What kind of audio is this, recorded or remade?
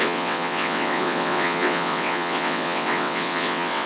remade